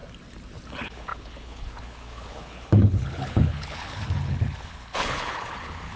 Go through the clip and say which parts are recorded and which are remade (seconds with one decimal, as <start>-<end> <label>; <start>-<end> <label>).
0.0-0.7 recorded; 0.7-6.0 remade